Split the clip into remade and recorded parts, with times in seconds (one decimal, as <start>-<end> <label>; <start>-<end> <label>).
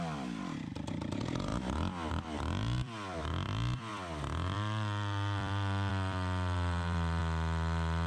0.0-1.5 remade; 1.5-2.1 recorded; 2.1-7.2 remade; 7.2-8.1 recorded